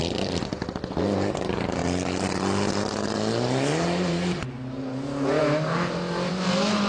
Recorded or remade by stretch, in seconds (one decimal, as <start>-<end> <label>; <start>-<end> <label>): 0.0-6.9 recorded